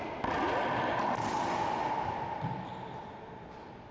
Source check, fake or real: real